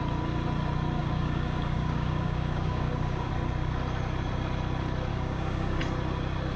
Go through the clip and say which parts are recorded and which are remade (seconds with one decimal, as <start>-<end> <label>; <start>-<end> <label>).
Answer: 0.0-1.0 recorded; 1.0-3.3 remade; 3.3-5.1 recorded; 5.1-5.8 remade; 5.8-6.6 recorded